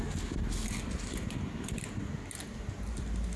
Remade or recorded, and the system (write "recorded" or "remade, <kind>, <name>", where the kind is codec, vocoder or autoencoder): recorded